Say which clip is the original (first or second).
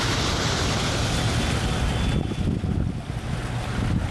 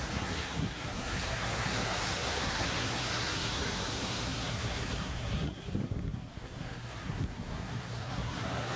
first